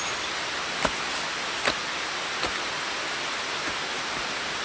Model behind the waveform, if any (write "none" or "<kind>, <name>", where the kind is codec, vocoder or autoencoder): none